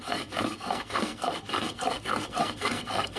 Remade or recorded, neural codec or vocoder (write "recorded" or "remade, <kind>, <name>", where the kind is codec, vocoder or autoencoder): remade, codec, SNAC